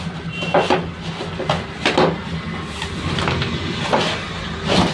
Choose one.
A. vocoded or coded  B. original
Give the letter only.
B